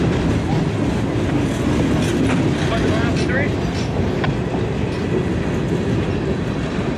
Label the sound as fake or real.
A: real